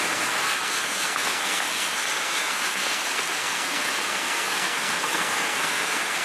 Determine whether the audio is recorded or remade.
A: remade